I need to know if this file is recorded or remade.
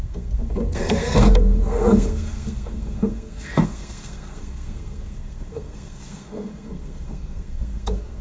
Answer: remade